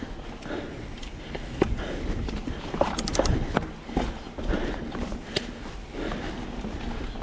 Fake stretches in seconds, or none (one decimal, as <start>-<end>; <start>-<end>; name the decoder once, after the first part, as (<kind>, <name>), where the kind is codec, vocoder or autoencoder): none